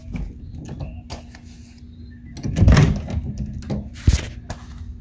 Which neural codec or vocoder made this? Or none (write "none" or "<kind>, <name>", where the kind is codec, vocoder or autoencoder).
none